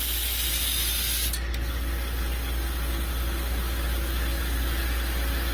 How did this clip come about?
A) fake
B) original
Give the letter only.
B